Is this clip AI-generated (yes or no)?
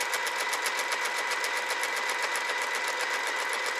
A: no